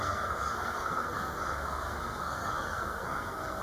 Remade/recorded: remade